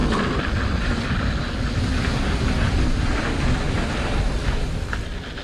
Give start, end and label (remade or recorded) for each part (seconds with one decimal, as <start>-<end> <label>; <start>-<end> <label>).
0.0-5.4 recorded